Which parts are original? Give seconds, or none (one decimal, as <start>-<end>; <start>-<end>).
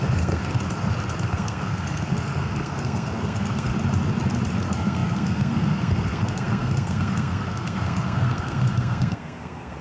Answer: 0.4-1.2; 3.7-4.6